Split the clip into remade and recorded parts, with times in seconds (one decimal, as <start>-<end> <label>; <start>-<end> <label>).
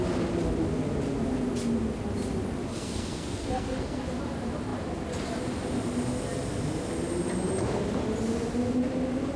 0.0-2.7 recorded; 2.7-4.0 remade; 4.0-9.4 recorded